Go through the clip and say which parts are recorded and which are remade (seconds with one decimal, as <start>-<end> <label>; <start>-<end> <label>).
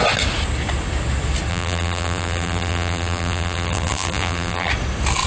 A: 0.0-1.5 recorded; 1.5-4.7 remade; 4.7-5.3 recorded